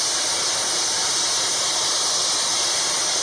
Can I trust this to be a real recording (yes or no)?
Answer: yes